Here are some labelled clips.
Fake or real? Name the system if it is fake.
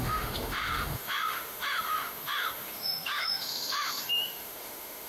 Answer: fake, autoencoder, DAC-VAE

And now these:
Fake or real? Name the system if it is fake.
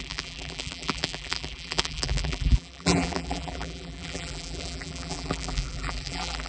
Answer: fake, vocoder, BigVGAN v2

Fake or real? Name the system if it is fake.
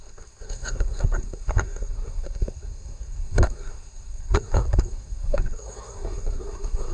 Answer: fake, codec, SNAC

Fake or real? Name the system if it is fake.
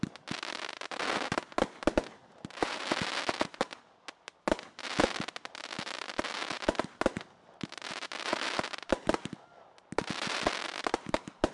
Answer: real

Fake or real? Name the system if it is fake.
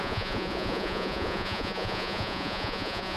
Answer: fake, vocoder, Vocos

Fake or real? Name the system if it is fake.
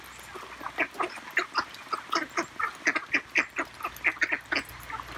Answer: real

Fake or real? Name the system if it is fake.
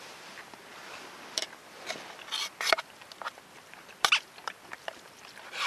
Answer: real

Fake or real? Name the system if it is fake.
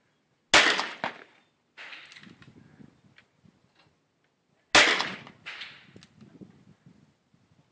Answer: real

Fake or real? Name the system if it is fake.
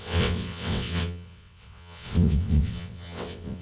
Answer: fake, vocoder, WaveNeXt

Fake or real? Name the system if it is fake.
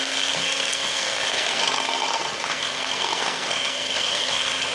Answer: fake, codec, SNAC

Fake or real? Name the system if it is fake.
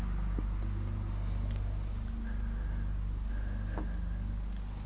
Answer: real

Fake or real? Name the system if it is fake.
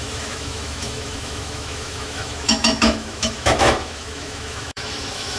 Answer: fake, autoencoder, DAC-VAE